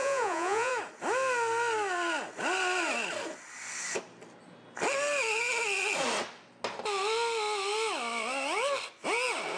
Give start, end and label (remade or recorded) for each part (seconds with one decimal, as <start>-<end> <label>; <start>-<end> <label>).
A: 0.0-0.7 remade; 0.7-9.6 recorded